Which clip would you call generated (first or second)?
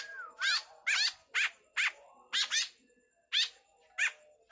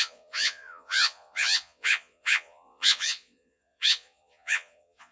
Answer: second